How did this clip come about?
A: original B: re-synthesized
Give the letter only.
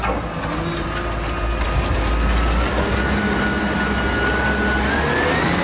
A